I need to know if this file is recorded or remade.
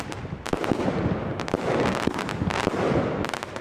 recorded